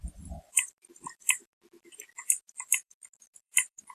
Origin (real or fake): fake